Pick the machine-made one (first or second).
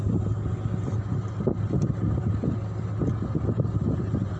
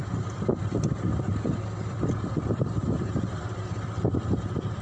second